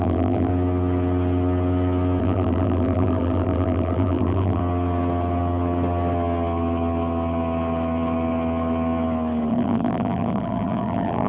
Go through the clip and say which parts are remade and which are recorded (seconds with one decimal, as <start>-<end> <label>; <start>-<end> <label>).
0.0-0.5 remade; 0.5-2.2 recorded; 2.2-4.6 remade; 4.6-9.5 recorded; 9.5-11.3 remade